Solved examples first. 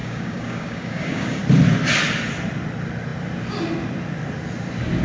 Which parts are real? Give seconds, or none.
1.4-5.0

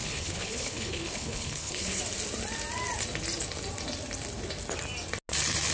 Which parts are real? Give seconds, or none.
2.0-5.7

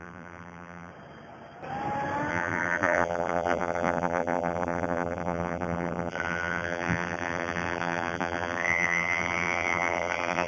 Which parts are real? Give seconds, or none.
0.9-2.3

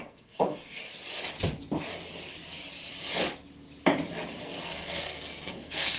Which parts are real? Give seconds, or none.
0.8-4.4

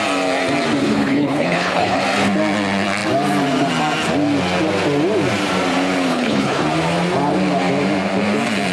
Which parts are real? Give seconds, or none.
0.0-0.8; 2.0-6.1; 6.6-8.7

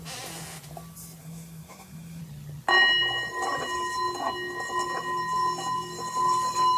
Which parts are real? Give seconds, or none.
0.0-1.2; 2.2-6.8

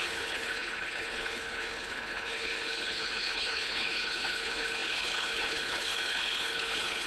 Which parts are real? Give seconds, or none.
none

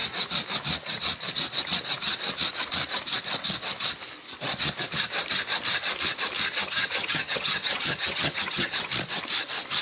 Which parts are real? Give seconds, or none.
0.0-6.6; 8.9-9.8